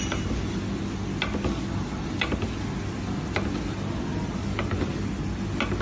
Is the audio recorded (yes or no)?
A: yes